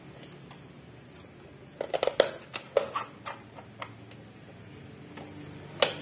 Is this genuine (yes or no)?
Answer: yes